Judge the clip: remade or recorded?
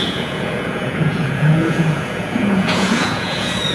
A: remade